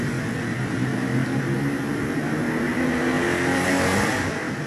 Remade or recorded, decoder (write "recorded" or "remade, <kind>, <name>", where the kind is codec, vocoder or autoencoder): recorded